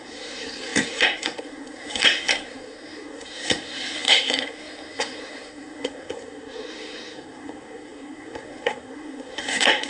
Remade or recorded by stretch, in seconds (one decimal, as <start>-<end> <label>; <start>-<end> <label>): 0.0-9.9 remade